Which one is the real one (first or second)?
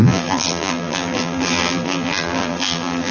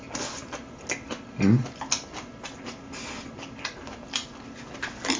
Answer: second